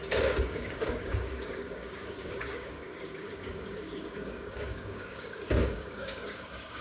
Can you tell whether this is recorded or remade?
remade